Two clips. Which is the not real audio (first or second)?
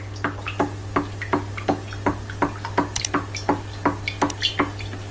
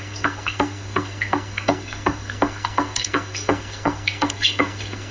second